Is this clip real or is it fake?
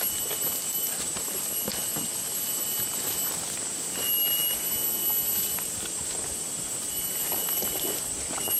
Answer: real